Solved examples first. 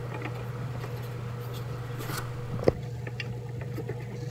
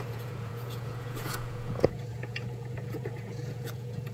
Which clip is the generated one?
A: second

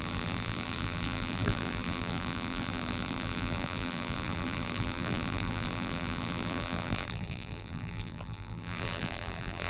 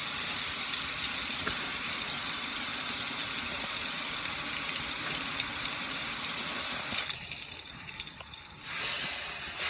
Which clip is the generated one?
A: first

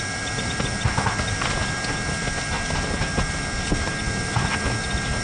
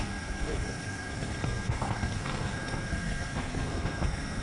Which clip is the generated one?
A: second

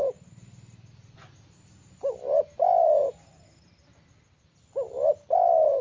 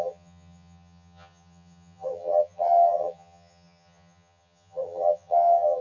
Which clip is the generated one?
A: second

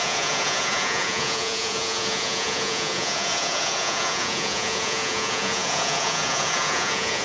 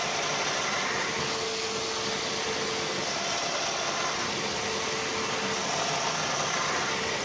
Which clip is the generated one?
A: first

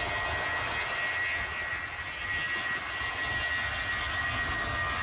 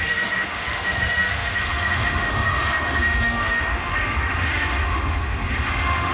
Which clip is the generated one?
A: second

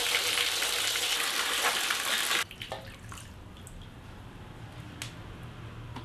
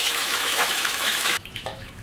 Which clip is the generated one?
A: second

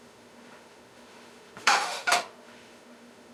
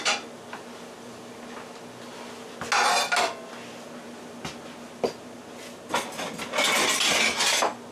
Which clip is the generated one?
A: first